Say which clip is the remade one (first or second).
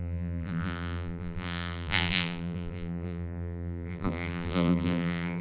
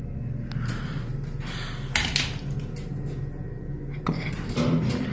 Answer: first